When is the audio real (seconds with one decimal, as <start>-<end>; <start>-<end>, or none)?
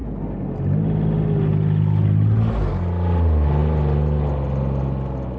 0.0-5.4